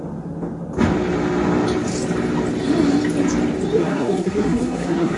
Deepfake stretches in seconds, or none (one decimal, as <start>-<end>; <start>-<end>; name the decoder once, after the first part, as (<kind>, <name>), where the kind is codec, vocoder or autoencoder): 3.8-5.2 (codec, SNAC)